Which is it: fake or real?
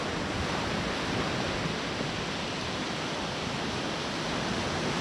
real